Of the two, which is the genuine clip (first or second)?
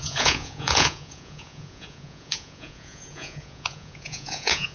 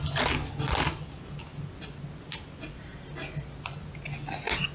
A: second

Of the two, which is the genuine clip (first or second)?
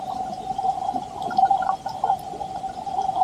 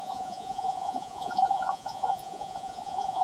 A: first